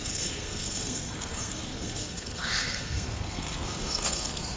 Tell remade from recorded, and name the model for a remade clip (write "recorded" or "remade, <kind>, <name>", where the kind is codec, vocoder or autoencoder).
remade, codec, SNAC